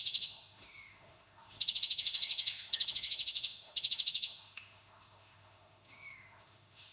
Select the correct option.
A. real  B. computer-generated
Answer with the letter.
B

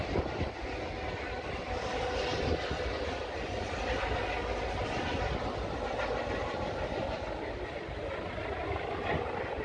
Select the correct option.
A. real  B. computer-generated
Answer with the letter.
A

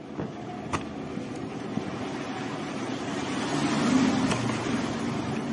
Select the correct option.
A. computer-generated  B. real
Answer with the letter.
B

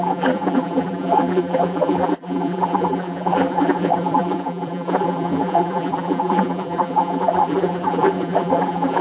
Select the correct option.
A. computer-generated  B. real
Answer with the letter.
A